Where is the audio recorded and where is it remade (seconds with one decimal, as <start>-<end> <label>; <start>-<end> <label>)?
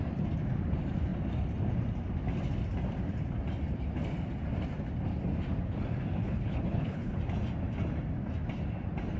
0.0-6.2 recorded; 6.2-7.2 remade; 7.2-9.2 recorded